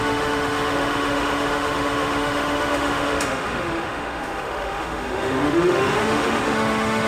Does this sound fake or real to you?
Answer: fake